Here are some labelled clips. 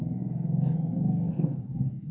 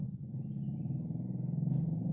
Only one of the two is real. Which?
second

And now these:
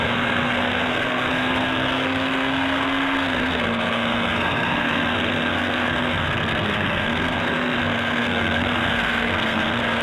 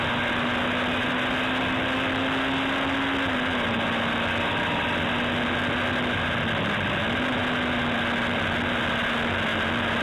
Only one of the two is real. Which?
second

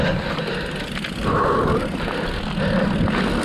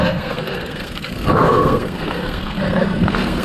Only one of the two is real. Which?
first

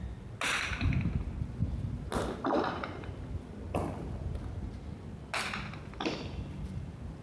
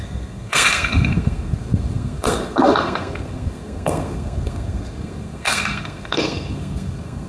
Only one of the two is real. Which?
first